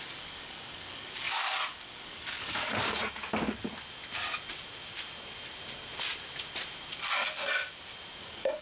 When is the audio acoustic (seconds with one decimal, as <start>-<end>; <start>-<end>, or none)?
3.0-8.2